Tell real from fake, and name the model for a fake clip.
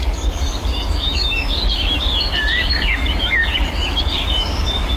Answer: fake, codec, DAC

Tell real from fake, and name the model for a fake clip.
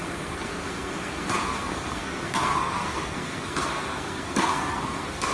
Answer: fake, codec, SNAC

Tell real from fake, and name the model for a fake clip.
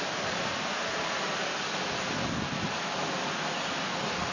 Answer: real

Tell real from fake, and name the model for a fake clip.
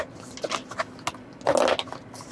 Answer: real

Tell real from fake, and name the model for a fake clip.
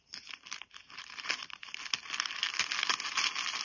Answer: real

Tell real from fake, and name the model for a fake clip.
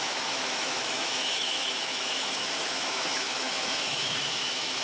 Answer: fake, autoencoder, DAC-VAE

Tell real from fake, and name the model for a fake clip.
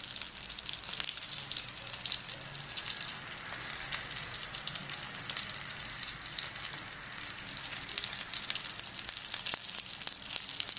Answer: real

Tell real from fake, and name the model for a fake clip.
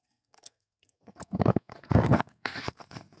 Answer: fake, codec, SNAC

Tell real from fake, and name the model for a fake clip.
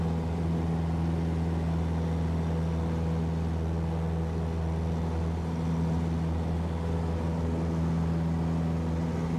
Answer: real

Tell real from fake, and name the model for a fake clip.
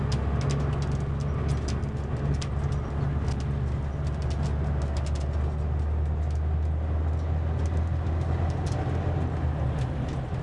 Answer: real